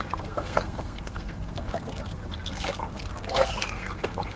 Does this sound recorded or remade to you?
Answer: remade